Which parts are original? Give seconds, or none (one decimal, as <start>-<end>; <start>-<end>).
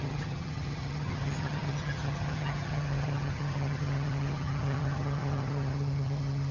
none